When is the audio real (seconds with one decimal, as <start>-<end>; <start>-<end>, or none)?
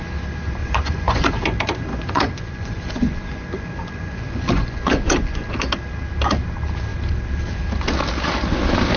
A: 0.0-0.6; 1.3-1.9; 5.5-9.0